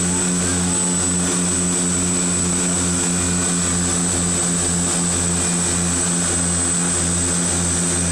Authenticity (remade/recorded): recorded